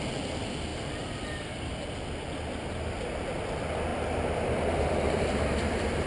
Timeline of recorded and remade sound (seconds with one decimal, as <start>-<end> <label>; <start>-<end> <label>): 0.0-0.7 recorded; 0.7-1.7 remade; 1.7-3.9 recorded; 3.9-6.1 remade